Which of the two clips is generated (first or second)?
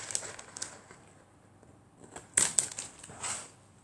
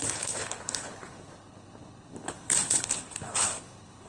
second